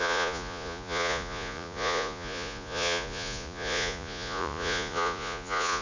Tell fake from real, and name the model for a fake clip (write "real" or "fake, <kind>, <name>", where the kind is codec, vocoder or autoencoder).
fake, vocoder, Vocos